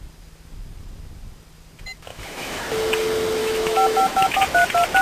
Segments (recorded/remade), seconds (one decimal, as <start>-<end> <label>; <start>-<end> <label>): 0.0-2.1 recorded; 2.1-2.6 remade; 2.6-3.4 recorded; 3.4-4.4 remade; 4.4-5.0 recorded